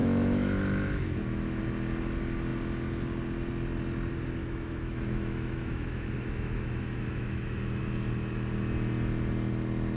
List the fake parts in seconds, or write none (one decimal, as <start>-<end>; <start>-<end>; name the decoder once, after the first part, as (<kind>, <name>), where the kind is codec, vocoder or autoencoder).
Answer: 0.0-1.6 (autoencoder, DAC-VAE); 4.4-7.8